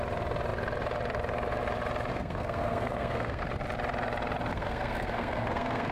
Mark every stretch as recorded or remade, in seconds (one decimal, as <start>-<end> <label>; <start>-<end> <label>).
0.0-2.1 recorded; 2.1-3.4 remade; 3.4-4.5 recorded; 4.5-5.9 remade